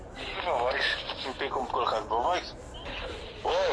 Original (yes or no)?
yes